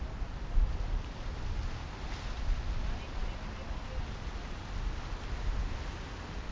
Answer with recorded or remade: recorded